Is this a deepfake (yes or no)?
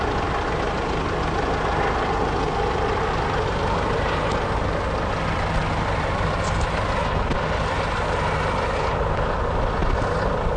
no